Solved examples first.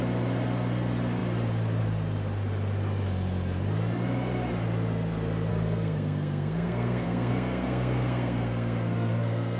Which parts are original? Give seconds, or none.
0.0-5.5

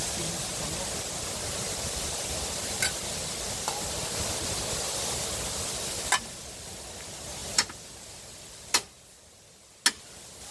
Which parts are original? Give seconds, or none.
0.0-10.5